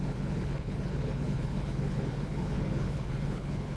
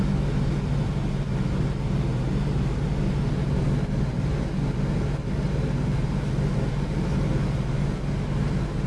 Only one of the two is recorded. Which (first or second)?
second